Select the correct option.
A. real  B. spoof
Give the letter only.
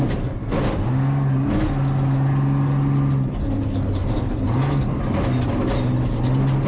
A